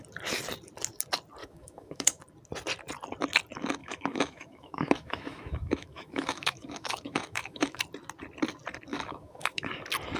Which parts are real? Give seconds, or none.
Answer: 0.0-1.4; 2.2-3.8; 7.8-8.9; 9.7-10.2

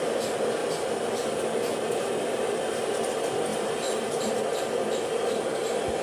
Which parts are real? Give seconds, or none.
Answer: 0.6-1.8

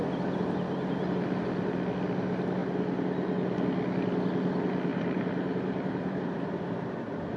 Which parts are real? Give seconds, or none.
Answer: 0.0-4.9; 6.5-7.4

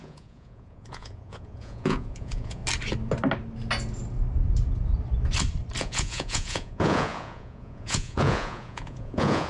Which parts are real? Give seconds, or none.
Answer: 2.6-5.8